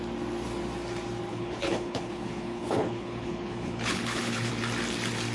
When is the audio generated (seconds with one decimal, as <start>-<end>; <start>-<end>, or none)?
1.3-4.5